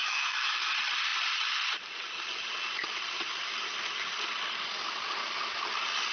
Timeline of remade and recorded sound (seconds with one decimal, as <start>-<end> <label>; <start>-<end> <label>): 0.0-0.6 remade; 0.6-6.1 recorded